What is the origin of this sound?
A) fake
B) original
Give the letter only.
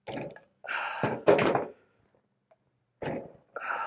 B